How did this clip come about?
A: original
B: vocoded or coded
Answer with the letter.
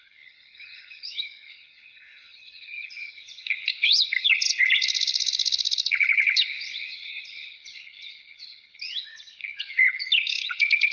B